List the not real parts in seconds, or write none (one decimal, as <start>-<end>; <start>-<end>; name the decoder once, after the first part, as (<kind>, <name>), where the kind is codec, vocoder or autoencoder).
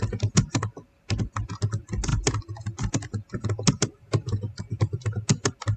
3.8-4.4 (vocoder, BigVGAN v2)